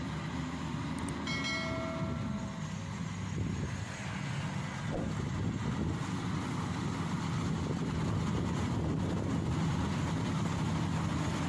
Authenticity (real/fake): real